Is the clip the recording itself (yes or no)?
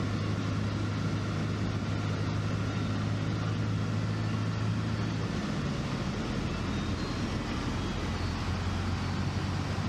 yes